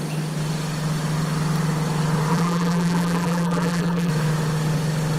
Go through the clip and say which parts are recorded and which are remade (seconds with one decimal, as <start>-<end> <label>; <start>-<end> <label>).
0.0-2.3 recorded; 2.3-4.1 remade; 4.1-5.2 recorded